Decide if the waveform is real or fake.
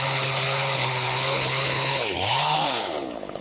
fake